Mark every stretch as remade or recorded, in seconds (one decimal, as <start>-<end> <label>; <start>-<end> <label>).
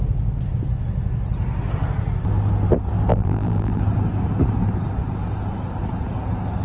0.0-3.1 recorded; 3.1-3.8 remade; 3.8-6.6 recorded